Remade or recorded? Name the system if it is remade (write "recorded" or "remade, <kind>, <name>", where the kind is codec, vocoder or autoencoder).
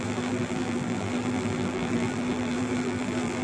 remade, vocoder, BigVGAN v2